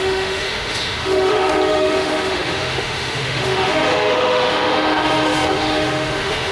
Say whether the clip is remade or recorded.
remade